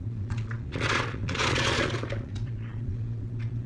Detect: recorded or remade remade